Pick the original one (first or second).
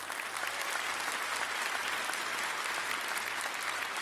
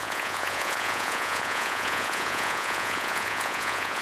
first